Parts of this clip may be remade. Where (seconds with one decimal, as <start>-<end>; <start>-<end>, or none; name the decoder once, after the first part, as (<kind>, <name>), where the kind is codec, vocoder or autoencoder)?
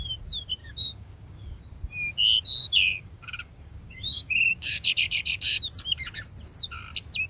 0.6-1.6 (codec, DAC); 2.6-5.6